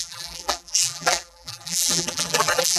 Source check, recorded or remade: remade